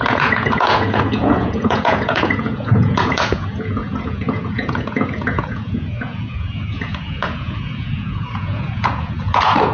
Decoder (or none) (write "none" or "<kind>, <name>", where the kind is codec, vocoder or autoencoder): vocoder, Vocos